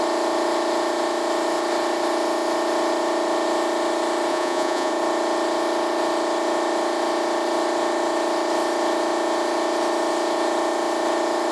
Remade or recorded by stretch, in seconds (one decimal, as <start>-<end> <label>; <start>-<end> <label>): 0.0-4.3 recorded; 4.3-4.9 remade; 4.9-11.5 recorded